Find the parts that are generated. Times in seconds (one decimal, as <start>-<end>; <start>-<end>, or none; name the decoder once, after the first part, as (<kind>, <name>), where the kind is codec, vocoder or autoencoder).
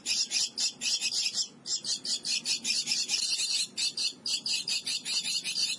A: none